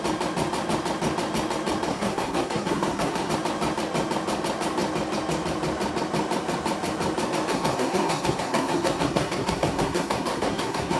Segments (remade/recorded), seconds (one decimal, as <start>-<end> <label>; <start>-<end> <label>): 0.0-1.9 recorded; 1.9-3.3 remade; 3.3-7.5 recorded; 7.5-11.0 remade